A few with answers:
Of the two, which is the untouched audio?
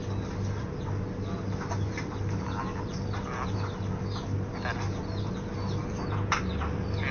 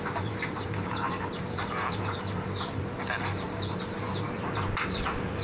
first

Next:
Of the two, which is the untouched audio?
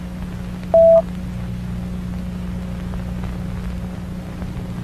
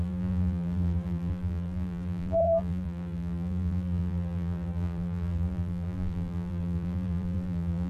first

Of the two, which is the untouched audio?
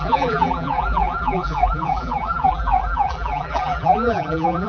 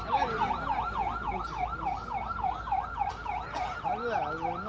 second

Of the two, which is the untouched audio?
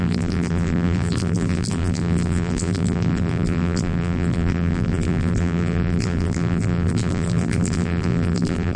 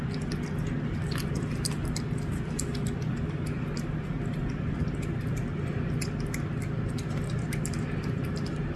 second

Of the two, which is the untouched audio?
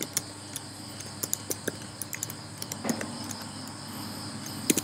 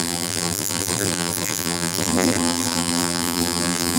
first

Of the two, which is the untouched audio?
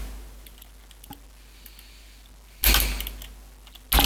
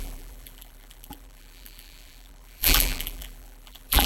first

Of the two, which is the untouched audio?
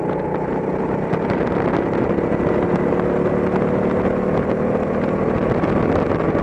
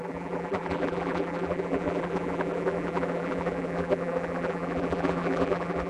first